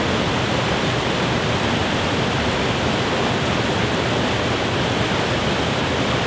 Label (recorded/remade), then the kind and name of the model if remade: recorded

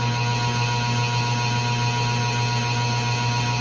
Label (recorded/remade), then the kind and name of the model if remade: recorded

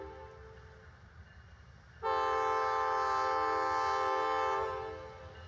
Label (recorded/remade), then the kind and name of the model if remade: recorded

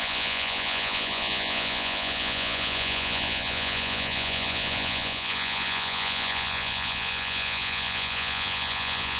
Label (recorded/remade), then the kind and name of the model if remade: remade, vocoder, Vocos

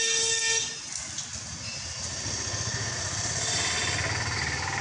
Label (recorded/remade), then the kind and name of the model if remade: recorded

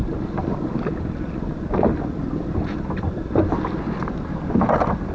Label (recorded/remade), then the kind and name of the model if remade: recorded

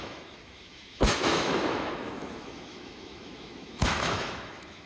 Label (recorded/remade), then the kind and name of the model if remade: remade, autoencoder, DAC-VAE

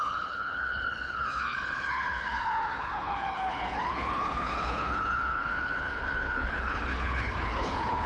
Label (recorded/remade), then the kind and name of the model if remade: remade, codec, HILCodec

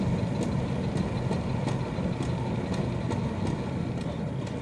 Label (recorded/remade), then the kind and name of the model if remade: recorded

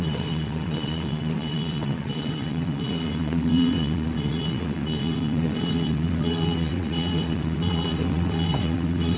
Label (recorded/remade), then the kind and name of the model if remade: remade, vocoder, WaveNeXt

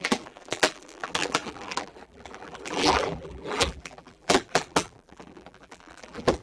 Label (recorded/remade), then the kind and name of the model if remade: remade, vocoder, BigVGAN v2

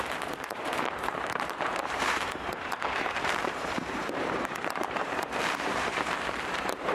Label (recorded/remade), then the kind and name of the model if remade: remade, vocoder, BigVGAN v2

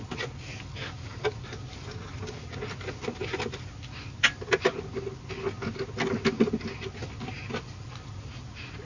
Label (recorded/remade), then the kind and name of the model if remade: recorded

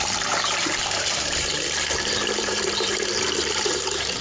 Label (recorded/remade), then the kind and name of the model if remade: remade, vocoder, BigVGAN v2